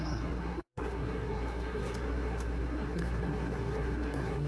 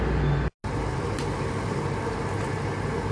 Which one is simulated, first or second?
first